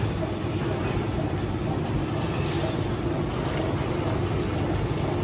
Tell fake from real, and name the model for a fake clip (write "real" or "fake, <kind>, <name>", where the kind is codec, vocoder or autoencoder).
real